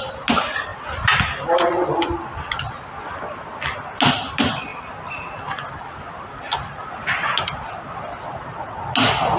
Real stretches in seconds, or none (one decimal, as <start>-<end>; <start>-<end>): 0.0-9.4